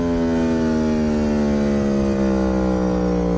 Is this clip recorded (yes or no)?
yes